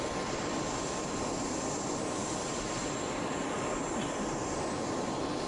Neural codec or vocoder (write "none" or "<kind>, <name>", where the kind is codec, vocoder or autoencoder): none